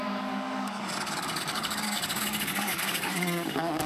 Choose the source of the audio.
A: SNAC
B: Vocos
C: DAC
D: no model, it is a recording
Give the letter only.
C